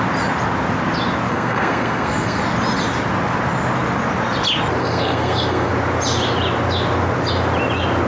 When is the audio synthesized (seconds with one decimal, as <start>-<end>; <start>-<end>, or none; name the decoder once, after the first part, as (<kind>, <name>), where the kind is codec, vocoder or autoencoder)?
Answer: 1.3-2.4 (codec, SNAC); 4.8-5.7